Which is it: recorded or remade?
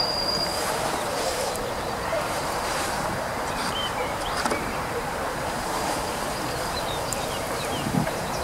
remade